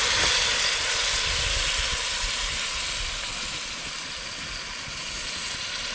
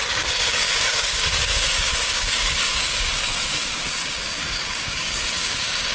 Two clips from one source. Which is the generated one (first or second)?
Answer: second